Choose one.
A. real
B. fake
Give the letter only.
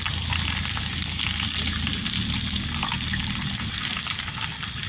A